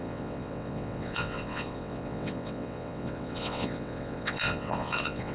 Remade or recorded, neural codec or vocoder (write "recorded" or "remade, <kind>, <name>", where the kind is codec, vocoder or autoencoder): remade, vocoder, WaveNeXt